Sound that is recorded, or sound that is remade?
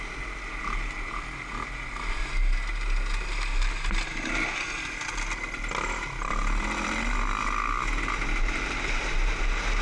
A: recorded